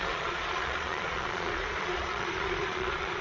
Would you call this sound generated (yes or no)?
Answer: yes